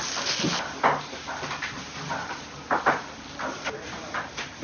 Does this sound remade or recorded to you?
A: recorded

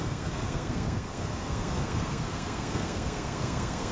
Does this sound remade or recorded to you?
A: remade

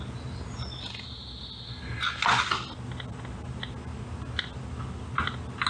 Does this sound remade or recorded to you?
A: recorded